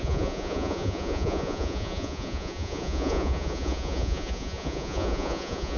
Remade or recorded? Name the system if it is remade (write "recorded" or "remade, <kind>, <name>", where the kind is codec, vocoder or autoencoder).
remade, vocoder, Vocos